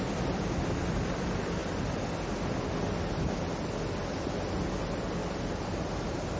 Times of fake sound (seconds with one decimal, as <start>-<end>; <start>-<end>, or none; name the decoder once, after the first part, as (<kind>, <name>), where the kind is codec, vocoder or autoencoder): 5.2-6.4 (vocoder, BigVGAN v2)